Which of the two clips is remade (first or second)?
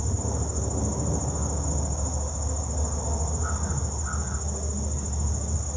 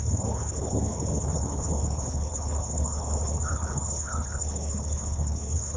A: second